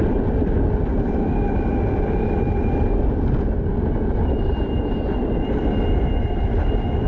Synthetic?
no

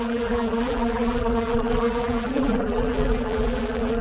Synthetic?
yes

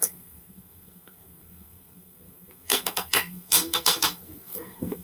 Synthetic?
yes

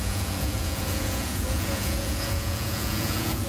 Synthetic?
yes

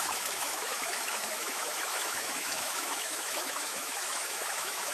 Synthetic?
yes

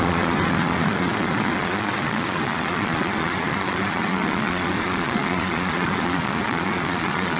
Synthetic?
yes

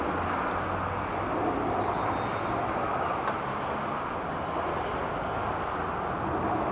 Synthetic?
no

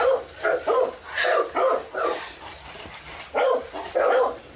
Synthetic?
no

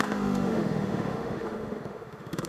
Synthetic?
yes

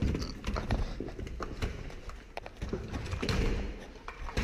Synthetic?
no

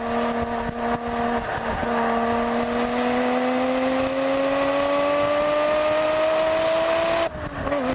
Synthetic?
no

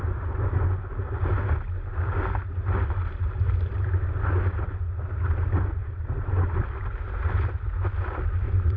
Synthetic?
no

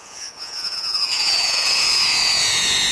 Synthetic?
yes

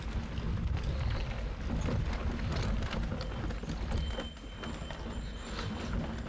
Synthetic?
no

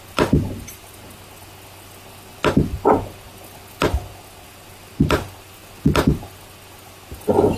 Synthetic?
no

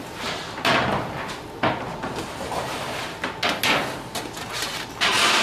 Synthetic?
no